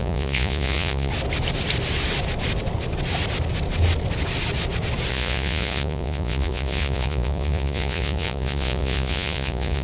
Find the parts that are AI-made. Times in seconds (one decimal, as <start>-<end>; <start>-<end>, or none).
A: 0.0-1.1; 5.1-9.8